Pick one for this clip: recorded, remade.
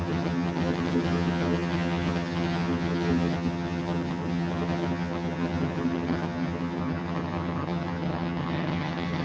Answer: remade